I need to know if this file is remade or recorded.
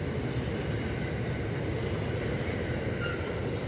recorded